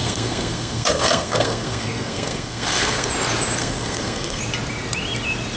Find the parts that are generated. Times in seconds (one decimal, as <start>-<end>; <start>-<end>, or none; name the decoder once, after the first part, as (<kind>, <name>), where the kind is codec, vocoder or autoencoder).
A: 0.0-3.1 (codec, SNAC); 3.6-4.4